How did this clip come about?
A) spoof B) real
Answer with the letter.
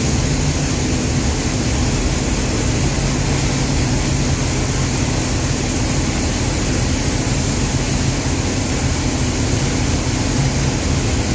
B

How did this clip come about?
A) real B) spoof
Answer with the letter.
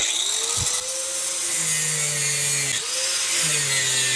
A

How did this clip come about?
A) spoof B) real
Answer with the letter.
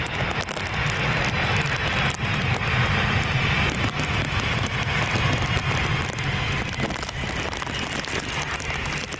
B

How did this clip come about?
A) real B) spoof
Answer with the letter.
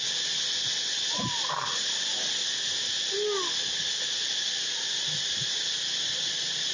A